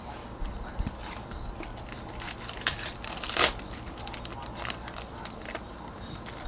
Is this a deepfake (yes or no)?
yes